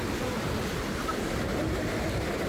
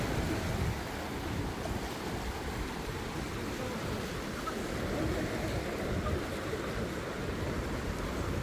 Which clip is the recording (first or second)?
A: second